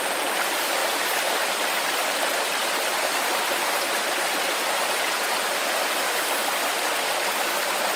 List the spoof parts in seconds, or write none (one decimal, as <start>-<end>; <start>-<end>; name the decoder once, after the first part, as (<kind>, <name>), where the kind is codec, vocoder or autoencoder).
0.8-1.5 (vocoder, BigVGAN v2); 2.6-6.7

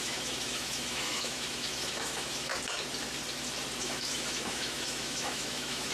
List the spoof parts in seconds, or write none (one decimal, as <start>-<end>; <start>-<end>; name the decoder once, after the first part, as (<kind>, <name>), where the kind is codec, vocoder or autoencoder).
0.0-2.5 (autoencoder, DAC-VAE); 3.8-5.9

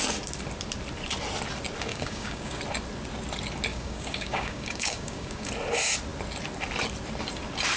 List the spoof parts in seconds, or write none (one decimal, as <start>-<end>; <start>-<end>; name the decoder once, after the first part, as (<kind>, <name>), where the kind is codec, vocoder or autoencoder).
1.9-2.6 (codec, DAC); 3.7-5.5

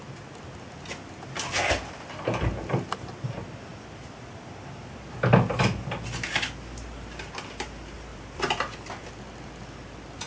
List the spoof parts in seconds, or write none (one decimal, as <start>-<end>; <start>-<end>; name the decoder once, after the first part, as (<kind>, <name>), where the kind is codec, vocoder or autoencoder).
3.7-4.9 (vocoder, BigVGAN v2); 8.1-9.1

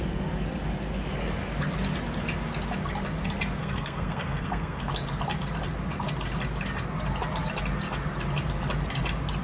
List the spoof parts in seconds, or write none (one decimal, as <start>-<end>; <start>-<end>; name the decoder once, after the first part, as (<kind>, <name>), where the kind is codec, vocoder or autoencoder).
3.6-4.9 (codec, SNAC)

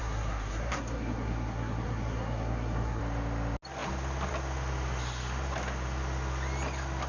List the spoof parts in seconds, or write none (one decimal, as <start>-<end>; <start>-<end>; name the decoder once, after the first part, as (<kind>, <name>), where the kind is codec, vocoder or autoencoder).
0.0-3.0 (codec, SNAC)

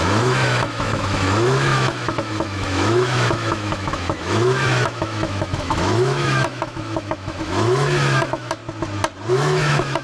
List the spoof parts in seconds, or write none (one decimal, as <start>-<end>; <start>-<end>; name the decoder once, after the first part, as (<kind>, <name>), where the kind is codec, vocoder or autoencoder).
0.0-8.6 (autoencoder, DAC-VAE); 9.3-10.0